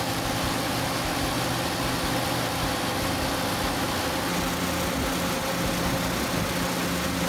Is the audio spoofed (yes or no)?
no